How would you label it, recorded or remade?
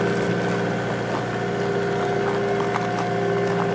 recorded